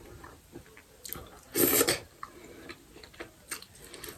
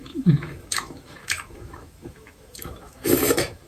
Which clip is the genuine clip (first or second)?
first